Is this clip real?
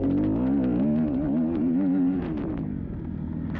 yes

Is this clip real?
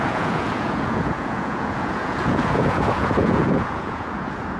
no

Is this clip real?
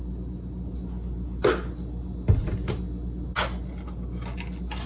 yes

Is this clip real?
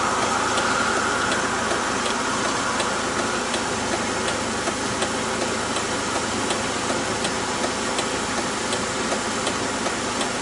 yes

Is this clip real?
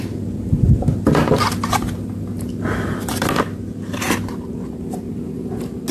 yes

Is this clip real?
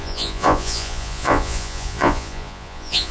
no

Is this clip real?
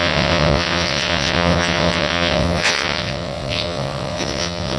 no